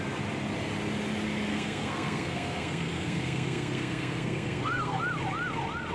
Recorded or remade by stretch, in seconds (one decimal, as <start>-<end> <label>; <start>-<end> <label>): 0.0-1.5 recorded; 1.5-5.0 remade; 5.0-5.9 recorded